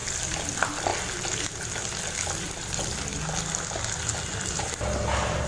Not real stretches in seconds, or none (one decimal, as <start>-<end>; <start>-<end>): 0.0-0.5

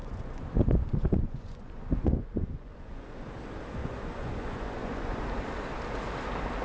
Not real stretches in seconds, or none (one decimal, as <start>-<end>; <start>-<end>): 0.0-3.3; 3.8-5.2

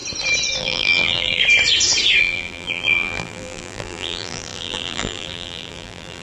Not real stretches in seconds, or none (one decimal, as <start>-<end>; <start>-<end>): 0.6-1.4; 2.2-6.2

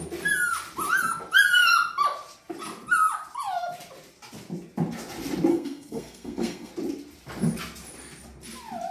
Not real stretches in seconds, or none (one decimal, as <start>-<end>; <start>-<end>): 5.5-6.7

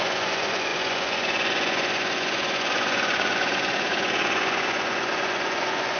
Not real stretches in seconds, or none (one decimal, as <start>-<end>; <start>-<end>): 0.0-6.0

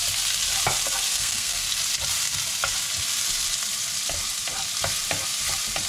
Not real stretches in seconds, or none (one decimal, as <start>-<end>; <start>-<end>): 1.1-1.7

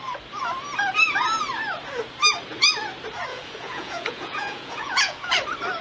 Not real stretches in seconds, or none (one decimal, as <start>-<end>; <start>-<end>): 3.3-5.3